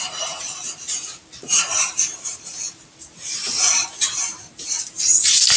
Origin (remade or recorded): remade